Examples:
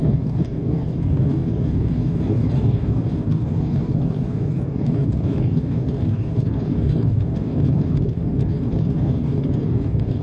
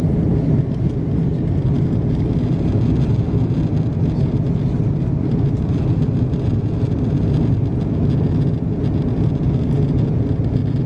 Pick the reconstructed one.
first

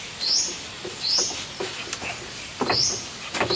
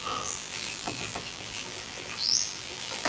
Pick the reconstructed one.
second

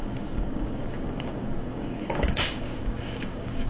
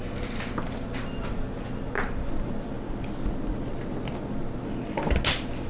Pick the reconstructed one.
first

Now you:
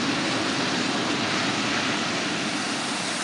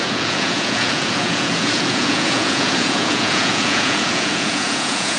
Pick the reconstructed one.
second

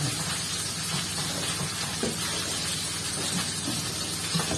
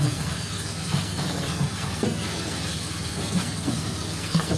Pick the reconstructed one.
second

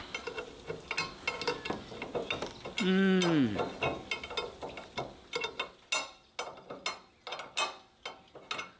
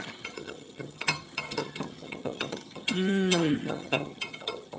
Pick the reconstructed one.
second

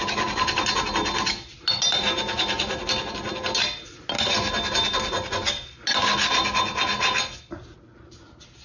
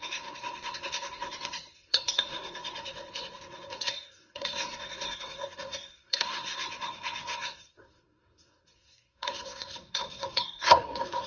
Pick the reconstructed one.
second